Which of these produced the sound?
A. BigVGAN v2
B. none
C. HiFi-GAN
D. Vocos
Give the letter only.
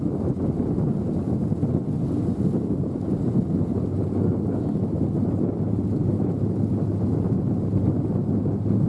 B